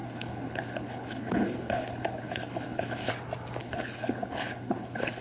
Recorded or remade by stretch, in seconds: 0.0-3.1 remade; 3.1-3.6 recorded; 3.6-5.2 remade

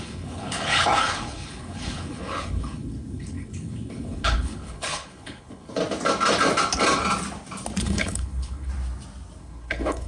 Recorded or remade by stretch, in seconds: 0.0-5.8 remade; 5.8-7.8 recorded; 7.8-8.7 remade; 8.7-9.4 recorded; 9.4-10.1 remade

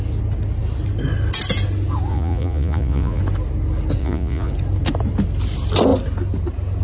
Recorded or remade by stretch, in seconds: 0.0-2.1 recorded; 2.1-3.2 remade; 3.2-4.0 recorded; 4.0-4.5 remade; 4.5-6.8 recorded

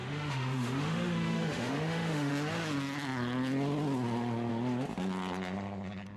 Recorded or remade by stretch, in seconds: 0.0-2.3 remade; 2.3-6.2 recorded